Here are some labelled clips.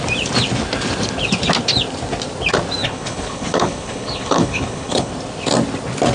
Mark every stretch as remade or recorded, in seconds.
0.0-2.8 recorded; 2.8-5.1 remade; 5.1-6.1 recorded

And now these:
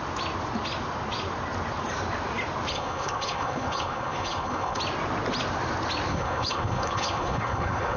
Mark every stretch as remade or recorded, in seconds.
0.0-2.7 recorded; 2.7-4.8 remade; 4.8-6.1 recorded; 6.1-8.0 remade

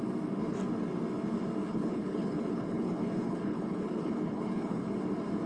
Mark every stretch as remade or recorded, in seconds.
0.0-1.6 recorded; 1.6-4.9 remade; 4.9-5.5 recorded

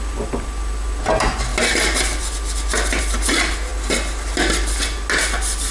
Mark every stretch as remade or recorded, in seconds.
0.0-5.7 recorded

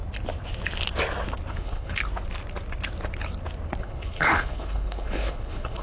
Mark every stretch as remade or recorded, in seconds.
0.0-1.5 recorded; 1.5-2.0 remade; 2.0-3.8 recorded; 3.8-5.8 remade

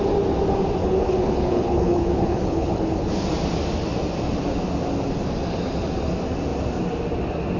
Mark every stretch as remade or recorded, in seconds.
0.0-0.8 recorded; 0.8-3.1 remade; 3.1-7.6 recorded

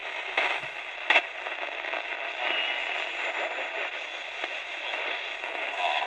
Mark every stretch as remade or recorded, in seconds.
0.0-6.1 recorded